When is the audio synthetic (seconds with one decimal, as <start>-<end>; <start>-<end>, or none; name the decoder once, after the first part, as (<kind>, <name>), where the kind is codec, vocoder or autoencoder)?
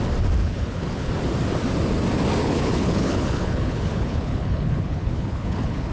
0.4-1.1 (codec, HILCodec); 2.4-5.9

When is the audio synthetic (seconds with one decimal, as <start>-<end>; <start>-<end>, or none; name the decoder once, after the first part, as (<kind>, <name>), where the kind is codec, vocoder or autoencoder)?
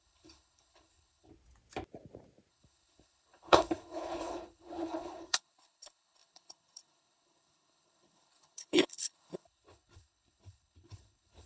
0.0-1.3 (codec, HILCodec); 2.5-11.5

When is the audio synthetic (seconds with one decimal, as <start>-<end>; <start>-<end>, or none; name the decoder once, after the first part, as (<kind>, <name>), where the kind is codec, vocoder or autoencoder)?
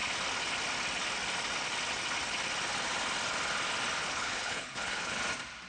4.0-5.2 (codec, HILCodec)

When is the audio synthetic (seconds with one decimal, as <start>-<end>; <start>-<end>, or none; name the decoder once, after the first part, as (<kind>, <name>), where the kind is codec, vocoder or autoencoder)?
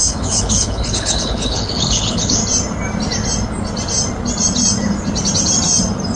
0.0-2.4 (codec, HILCodec)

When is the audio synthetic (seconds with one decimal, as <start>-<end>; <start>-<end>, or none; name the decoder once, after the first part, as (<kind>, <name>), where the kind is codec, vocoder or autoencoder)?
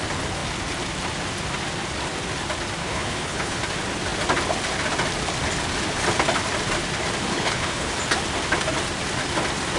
2.8-3.6 (codec, HILCodec); 7.3-7.9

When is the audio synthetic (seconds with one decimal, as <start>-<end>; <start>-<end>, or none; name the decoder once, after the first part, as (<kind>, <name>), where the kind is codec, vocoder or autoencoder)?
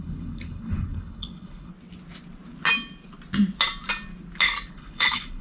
0.0-1.7 (codec, HILCodec); 4.7-5.4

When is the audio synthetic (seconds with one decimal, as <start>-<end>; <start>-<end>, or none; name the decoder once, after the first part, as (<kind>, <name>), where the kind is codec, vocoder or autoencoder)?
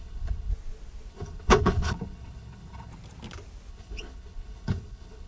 0.0-0.5 (codec, HILCodec); 1.1-2.9; 3.7-5.3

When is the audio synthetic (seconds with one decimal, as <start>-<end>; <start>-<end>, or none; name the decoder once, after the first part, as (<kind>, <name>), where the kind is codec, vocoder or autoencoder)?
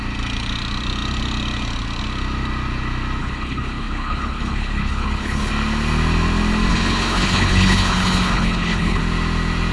3.2-5.5 (codec, HILCodec); 6.7-9.0